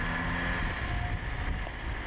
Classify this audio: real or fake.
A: real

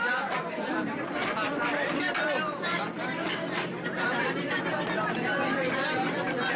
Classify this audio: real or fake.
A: fake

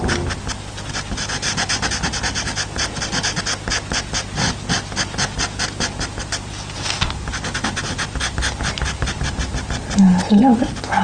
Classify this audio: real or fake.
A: real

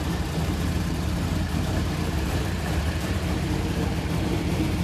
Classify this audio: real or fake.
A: fake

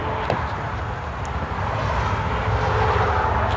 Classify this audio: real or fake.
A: real